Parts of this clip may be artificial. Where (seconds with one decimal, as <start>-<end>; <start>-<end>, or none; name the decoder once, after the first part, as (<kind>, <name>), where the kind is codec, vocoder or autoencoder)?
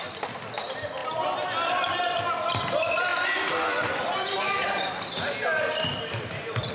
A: 3.1-4.9 (vocoder, BigVGAN v2); 5.9-6.7